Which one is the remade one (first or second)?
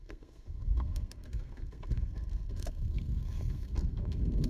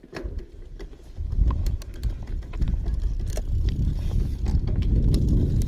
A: first